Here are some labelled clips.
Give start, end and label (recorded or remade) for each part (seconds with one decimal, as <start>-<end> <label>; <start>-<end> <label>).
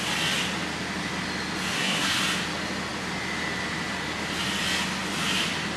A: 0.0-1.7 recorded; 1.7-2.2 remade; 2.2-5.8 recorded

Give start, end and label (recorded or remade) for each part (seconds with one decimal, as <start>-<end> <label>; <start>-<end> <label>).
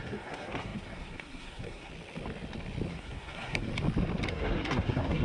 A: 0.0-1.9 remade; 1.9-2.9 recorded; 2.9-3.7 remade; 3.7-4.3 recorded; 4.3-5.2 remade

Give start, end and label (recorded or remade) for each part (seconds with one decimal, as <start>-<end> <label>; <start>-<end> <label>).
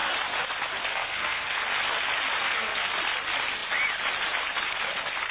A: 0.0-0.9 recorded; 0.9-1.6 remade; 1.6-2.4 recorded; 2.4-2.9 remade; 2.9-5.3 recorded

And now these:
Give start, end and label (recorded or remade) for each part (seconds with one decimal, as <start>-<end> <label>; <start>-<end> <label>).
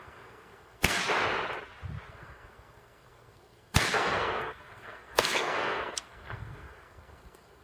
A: 0.0-1.0 remade; 1.0-2.1 recorded; 2.1-7.6 remade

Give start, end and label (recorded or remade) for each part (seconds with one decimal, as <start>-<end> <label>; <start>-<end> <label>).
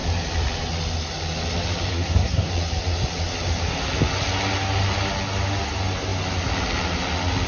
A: 0.0-1.9 recorded; 1.9-2.5 remade; 2.5-7.5 recorded